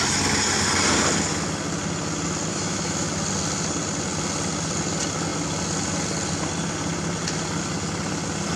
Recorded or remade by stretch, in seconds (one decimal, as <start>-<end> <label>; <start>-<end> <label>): 0.0-2.5 recorded; 2.5-3.1 remade; 3.1-8.6 recorded